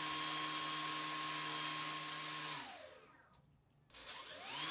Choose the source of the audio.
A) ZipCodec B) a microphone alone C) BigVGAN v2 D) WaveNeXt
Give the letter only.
B